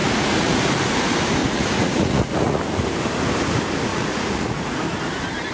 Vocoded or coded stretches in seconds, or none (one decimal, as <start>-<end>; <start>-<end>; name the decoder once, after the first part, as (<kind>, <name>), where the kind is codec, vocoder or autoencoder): 0.0-0.6 (vocoder, Vocos); 1.4-2.6; 3.9-4.8